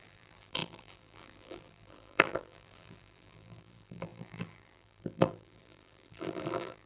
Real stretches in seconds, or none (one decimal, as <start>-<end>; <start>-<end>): none